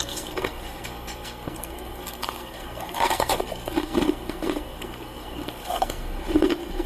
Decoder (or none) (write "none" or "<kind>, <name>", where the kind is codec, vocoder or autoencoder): codec, SNAC